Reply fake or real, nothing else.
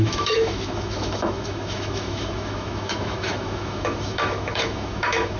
fake